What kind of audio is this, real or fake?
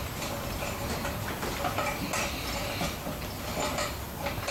real